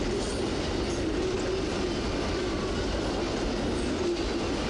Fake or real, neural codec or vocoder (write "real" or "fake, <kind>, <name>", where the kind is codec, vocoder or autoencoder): real